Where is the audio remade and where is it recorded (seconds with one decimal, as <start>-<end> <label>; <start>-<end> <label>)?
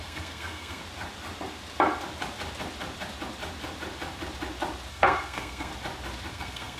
0.0-0.8 remade; 0.8-4.9 recorded; 4.9-5.7 remade; 5.7-6.3 recorded; 6.3-6.8 remade